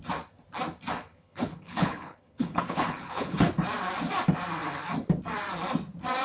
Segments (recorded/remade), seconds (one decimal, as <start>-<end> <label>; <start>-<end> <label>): 0.0-1.1 recorded; 1.1-3.5 remade; 3.5-6.2 recorded